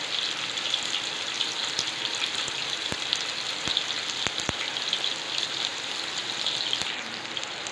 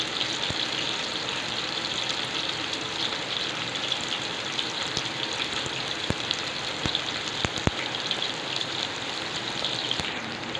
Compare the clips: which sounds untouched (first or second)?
first